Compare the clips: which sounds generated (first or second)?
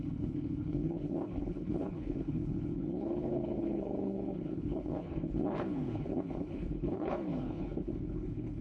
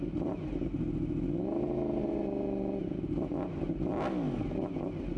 first